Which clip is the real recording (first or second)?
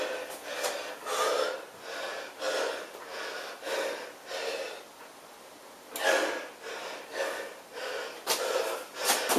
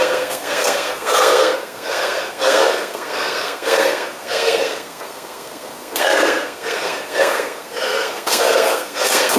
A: first